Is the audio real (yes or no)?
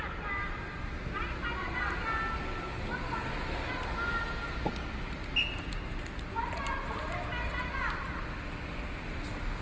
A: yes